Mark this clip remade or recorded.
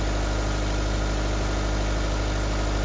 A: recorded